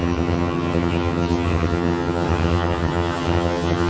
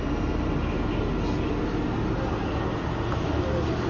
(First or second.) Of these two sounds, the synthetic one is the first